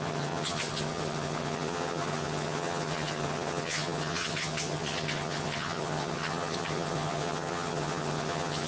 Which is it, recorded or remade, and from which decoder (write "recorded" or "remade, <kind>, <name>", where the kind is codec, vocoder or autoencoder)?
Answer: remade, vocoder, HiFi-GAN